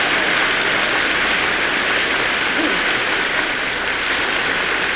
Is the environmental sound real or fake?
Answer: real